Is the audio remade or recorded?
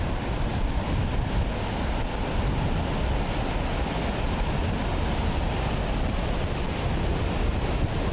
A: recorded